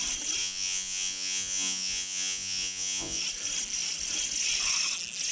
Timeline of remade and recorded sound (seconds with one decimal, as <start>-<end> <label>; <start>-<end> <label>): 0.0-0.4 recorded; 0.4-3.2 remade; 3.2-5.3 recorded